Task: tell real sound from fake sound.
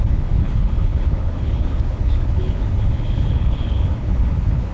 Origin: fake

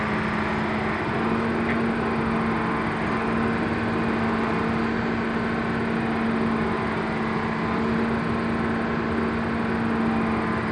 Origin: real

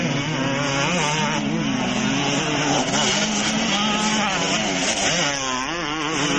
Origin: real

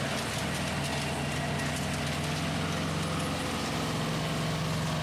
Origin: real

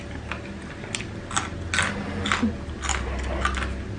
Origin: real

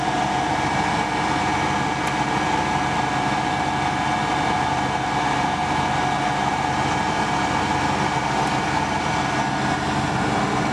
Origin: real